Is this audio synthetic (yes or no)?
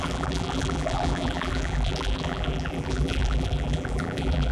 yes